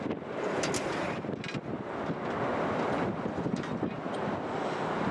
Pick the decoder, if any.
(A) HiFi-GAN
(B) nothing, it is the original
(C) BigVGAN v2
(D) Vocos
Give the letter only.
B